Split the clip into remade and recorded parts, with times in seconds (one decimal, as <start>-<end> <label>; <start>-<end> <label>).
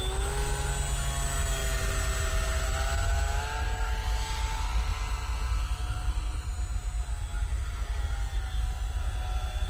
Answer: 0.0-9.7 recorded